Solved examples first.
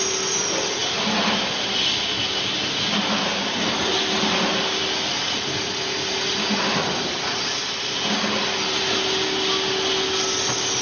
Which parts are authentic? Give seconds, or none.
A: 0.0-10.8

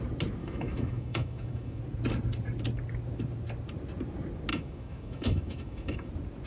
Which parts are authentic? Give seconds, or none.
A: 0.0-0.4; 1.8-4.5; 6.1-6.5

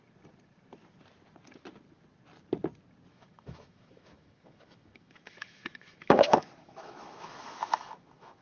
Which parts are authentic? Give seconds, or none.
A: 0.0-3.1

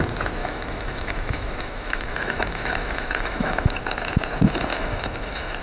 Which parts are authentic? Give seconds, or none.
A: 0.0-0.4; 3.8-4.7